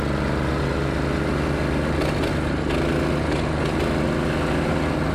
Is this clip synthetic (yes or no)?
no